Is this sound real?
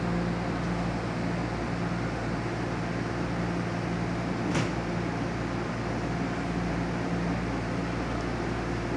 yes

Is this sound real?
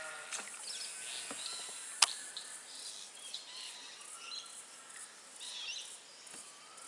yes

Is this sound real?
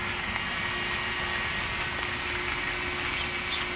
yes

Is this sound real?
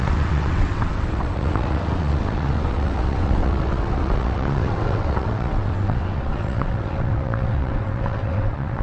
no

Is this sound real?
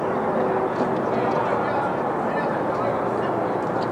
yes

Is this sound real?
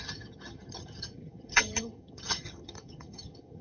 no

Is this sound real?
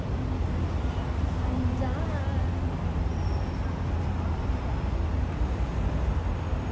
yes